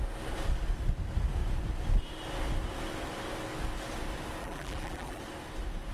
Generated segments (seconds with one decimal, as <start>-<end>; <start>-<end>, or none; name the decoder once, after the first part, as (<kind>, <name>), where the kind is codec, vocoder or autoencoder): 4.4-5.2 (vocoder, BigVGAN v2)